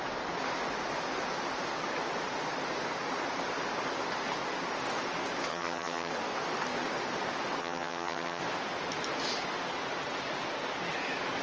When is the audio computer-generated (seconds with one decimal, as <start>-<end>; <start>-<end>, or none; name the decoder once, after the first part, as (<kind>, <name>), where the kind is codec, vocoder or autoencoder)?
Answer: 5.5-6.1 (vocoder, HiFi-GAN); 7.6-8.4